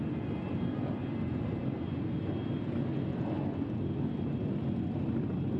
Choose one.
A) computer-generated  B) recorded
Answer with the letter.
B